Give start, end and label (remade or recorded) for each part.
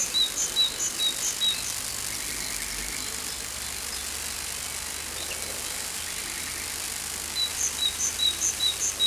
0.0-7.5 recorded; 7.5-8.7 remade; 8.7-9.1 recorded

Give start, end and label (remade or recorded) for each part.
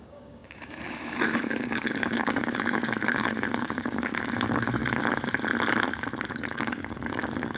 0.0-4.8 remade; 4.8-6.3 recorded; 6.3-7.6 remade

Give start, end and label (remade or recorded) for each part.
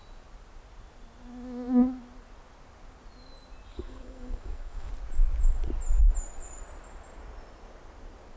0.0-3.7 recorded; 3.7-4.9 remade; 4.9-8.4 recorded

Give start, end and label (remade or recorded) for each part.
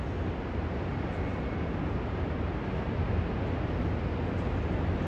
0.0-5.1 recorded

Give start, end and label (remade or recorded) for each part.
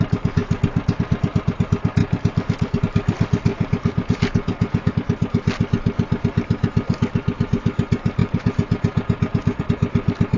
0.0-3.5 recorded; 3.5-4.9 remade; 4.9-8.2 recorded; 8.2-9.6 remade; 9.6-10.4 recorded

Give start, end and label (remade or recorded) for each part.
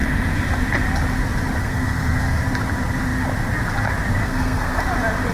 0.0-1.6 recorded; 1.6-2.4 remade; 2.4-4.2 recorded; 4.2-4.8 remade; 4.8-5.3 recorded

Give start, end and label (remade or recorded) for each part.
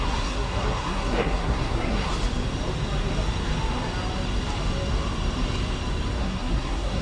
0.0-2.1 remade; 2.1-6.2 recorded; 6.2-7.0 remade